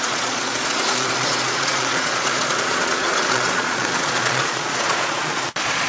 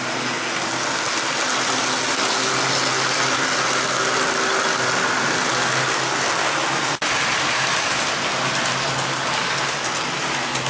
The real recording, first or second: second